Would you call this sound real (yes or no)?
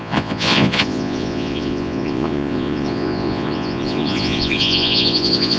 no